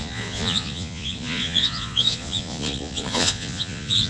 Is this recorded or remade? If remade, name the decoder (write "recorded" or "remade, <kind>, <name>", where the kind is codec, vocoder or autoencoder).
remade, vocoder, Vocos